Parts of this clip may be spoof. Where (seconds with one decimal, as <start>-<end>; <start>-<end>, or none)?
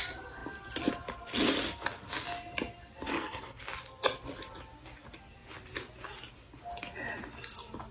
3.1-3.6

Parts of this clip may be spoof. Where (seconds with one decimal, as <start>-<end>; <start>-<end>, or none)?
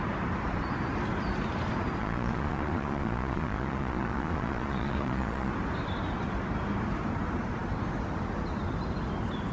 2.0-5.5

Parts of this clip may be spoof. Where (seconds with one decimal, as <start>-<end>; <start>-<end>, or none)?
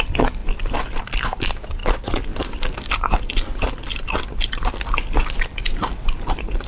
none